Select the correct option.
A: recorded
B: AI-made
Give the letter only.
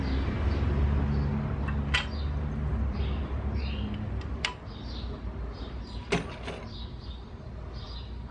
A